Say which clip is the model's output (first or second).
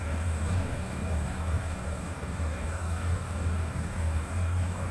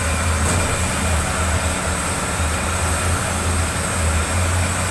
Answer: first